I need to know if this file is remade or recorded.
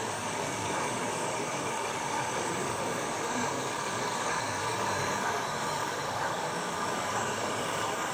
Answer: remade